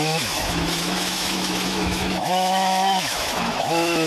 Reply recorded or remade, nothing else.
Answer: remade